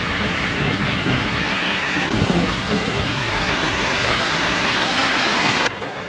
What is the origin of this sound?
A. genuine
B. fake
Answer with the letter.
B